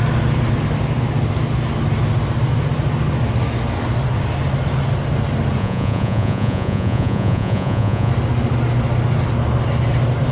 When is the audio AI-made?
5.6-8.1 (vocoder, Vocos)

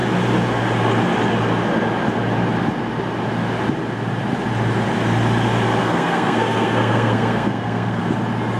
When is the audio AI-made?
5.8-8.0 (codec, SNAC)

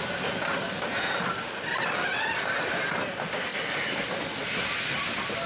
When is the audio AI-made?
none

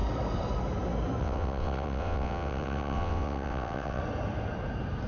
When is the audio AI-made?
1.2-4.0 (vocoder, WaveNeXt)

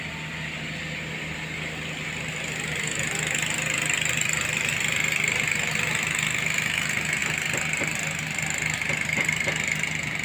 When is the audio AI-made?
none